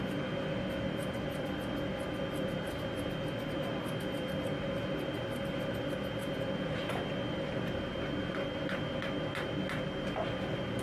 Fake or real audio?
real